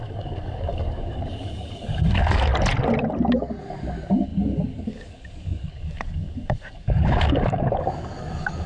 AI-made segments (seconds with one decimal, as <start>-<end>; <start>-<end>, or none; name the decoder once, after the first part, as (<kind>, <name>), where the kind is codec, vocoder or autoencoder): 0.0-2.5 (codec, DAC); 3.6-8.7